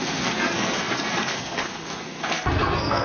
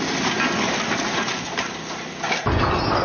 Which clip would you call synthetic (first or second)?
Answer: first